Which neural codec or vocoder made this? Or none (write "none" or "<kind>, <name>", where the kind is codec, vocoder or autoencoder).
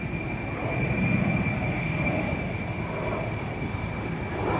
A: none